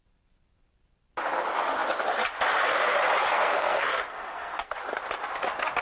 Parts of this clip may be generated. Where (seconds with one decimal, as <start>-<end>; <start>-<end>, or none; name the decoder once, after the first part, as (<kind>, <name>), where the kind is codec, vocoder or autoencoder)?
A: 3.3-4.7 (codec, SNAC)